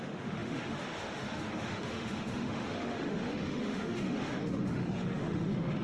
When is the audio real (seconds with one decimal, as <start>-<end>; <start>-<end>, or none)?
none